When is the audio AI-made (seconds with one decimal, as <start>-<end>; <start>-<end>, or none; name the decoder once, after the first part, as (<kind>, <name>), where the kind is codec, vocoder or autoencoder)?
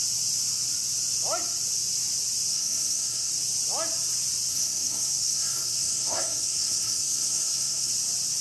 2.5-3.3 (codec, SNAC); 4.5-7.9